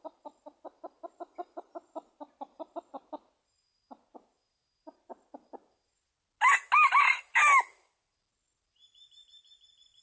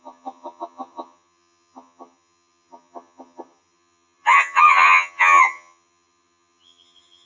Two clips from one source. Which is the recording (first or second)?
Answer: first